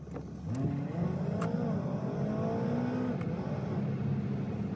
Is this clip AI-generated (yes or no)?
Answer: no